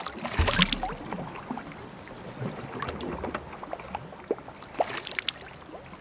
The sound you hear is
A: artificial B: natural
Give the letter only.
B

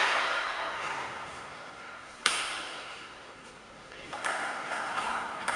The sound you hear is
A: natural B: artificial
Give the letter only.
B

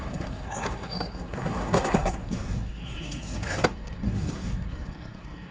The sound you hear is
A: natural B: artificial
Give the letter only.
B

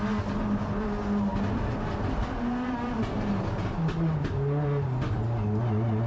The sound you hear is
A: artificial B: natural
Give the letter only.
B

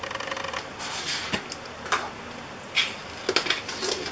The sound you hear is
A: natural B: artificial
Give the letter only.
A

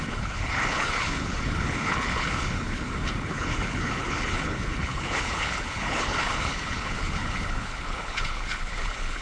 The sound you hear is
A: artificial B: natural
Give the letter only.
A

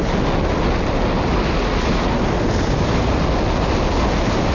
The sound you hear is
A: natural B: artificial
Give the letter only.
A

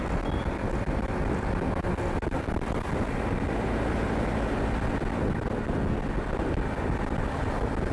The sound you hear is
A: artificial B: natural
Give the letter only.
B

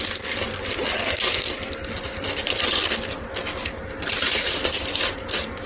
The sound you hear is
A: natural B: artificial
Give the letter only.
A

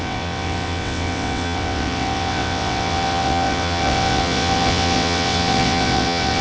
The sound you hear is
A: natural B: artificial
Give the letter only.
B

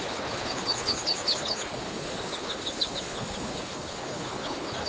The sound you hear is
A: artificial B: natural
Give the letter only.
A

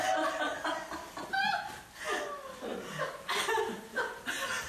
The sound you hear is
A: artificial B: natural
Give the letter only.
B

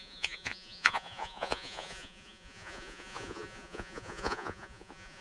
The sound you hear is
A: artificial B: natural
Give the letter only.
A